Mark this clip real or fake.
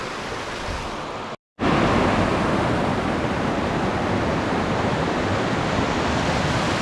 real